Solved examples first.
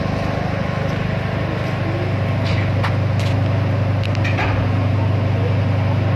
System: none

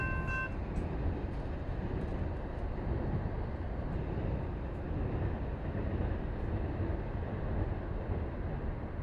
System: none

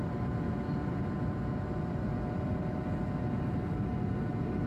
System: none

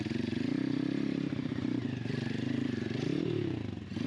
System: vocoder, BigVGAN v2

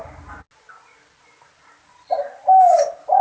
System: none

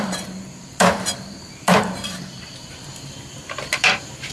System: vocoder, BigVGAN v2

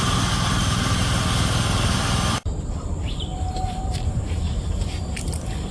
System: vocoder, BigVGAN v2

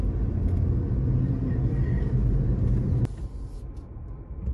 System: none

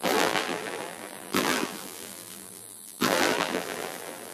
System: vocoder, BigVGAN v2